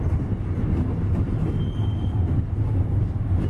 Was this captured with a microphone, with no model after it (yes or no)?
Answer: yes